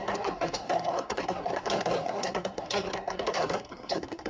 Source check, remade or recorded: remade